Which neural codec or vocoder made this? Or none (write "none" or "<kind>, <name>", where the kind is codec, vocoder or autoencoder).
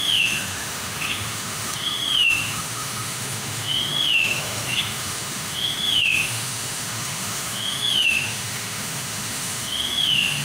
autoencoder, DAC-VAE